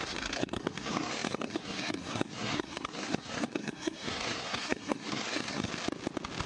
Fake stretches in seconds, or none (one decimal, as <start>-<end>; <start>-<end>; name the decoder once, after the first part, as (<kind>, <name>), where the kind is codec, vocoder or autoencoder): 0.0-5.7 (codec, SNAC)